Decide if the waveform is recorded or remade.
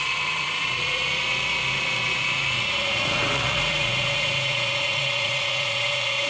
remade